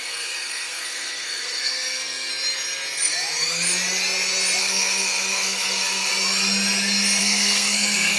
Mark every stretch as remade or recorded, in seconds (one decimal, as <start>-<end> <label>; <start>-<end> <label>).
0.0-2.3 remade; 2.3-4.6 recorded; 4.6-6.1 remade; 6.1-7.2 recorded; 7.2-8.2 remade